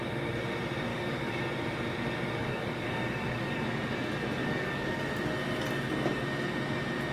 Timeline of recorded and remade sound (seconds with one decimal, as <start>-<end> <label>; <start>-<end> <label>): 0.0-0.9 recorded; 0.9-1.4 remade; 1.4-2.4 recorded; 2.4-3.6 remade; 3.6-4.4 recorded; 4.4-5.1 remade; 5.1-7.1 recorded